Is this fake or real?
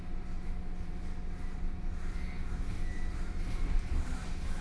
real